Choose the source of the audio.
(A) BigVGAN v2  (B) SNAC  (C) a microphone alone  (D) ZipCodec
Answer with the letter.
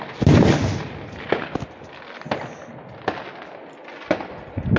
C